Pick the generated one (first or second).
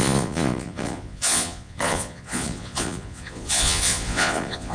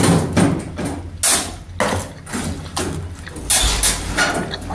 first